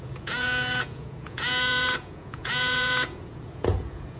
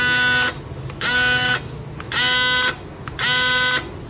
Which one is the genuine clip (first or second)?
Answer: second